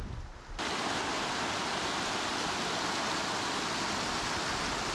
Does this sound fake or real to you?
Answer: real